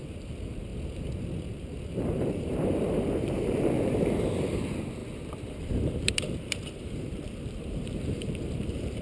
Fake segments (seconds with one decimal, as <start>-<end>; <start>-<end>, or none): 0.0-0.7; 1.5-9.0